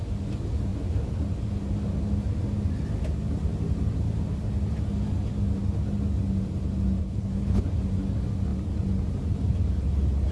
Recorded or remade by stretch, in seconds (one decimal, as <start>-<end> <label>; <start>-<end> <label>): 0.0-7.0 recorded; 7.0-7.6 remade; 7.6-10.3 recorded